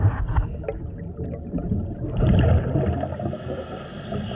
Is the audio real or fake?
real